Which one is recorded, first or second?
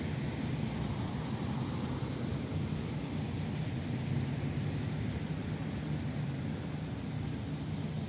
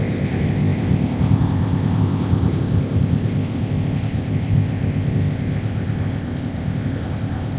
first